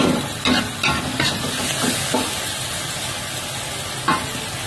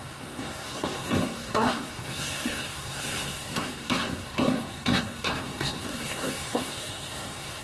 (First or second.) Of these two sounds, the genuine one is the first